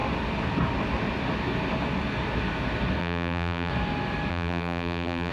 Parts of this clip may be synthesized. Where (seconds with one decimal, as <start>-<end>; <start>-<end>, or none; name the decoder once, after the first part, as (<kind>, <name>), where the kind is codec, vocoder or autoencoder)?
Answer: 3.0-3.7 (vocoder, BigVGAN v2); 4.3-5.3